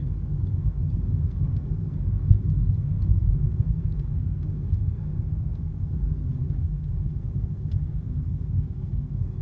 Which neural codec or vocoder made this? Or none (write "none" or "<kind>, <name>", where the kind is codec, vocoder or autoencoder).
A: codec, SNAC